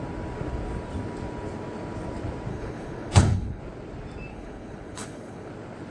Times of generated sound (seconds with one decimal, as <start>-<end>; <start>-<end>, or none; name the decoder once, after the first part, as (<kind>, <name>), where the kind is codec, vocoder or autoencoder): 2.5-3.6 (codec, HILCodec); 4.3-5.5